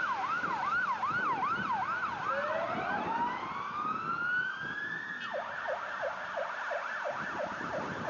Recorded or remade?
recorded